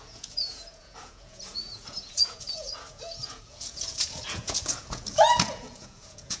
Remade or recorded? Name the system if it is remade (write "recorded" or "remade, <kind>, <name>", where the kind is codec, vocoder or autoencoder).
remade, vocoder, Vocos